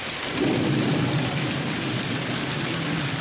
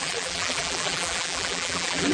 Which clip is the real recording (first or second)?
first